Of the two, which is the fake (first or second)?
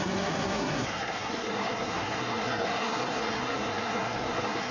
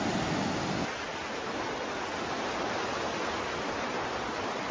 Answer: first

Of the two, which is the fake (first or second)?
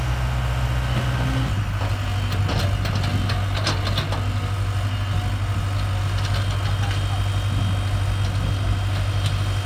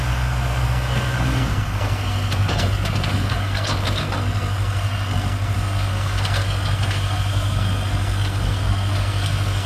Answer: second